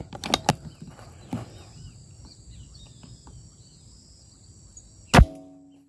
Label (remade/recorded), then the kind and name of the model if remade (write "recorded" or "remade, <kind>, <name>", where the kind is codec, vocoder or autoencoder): recorded